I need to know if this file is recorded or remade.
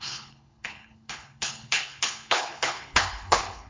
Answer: remade